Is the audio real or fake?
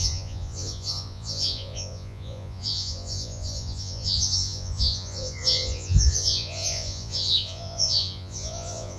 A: fake